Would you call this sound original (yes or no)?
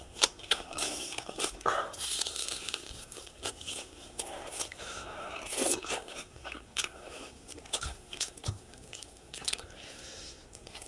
no